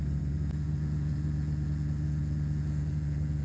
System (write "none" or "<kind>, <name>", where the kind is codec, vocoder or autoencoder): vocoder, Vocos